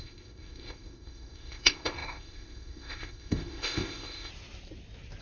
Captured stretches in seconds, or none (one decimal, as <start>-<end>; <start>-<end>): 4.3-5.2